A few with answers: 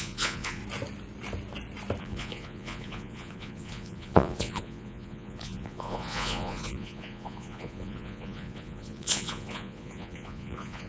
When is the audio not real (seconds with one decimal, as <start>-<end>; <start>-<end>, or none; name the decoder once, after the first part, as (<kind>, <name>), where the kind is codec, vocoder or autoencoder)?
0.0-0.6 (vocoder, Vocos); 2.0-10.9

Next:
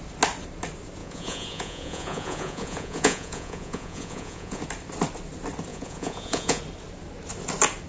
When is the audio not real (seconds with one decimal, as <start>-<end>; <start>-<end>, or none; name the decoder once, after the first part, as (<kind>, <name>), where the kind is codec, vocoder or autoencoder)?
1.0-4.6 (vocoder, Vocos); 5.7-6.6

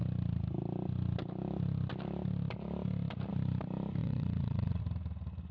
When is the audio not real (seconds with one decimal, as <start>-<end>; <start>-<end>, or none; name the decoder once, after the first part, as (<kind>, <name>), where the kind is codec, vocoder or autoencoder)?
4.0-4.8 (vocoder, Vocos)

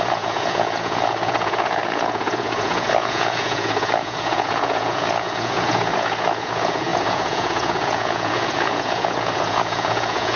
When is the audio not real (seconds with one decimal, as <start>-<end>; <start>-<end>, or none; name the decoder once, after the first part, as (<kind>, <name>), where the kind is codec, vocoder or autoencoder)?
0.0-10.4 (vocoder, Vocos)

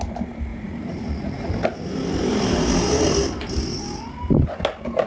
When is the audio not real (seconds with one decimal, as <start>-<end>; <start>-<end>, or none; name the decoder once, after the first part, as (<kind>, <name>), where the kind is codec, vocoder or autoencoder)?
0.5-1.5 (vocoder, Vocos)